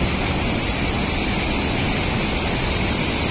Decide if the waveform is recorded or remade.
recorded